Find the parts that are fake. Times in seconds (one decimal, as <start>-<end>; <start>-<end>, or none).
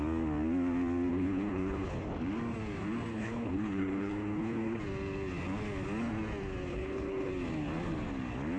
1.1-1.9; 3.1-4.8; 6.7-7.3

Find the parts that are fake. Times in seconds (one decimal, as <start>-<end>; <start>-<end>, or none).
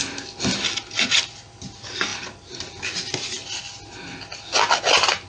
none